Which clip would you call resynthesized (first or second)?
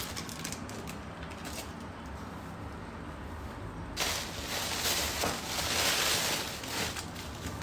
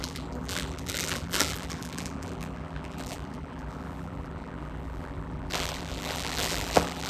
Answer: second